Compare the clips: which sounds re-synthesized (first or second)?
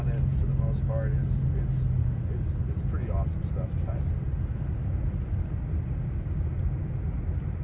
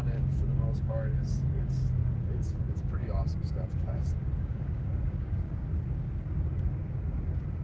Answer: second